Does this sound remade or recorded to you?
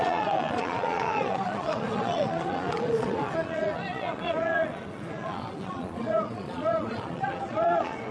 remade